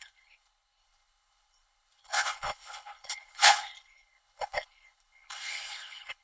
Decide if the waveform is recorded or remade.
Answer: remade